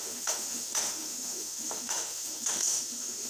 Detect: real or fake fake